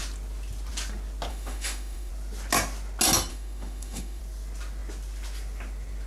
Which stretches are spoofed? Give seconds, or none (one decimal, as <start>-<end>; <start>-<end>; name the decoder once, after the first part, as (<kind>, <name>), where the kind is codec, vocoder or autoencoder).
1.3-2.1 (autoencoder, DAC-VAE); 3.3-4.2